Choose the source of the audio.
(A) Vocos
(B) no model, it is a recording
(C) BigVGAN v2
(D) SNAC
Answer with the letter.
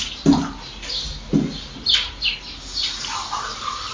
B